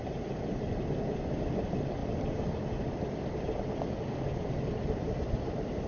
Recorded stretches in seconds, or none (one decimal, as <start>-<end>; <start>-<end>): 0.0-5.9